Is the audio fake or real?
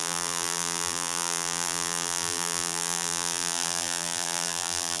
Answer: fake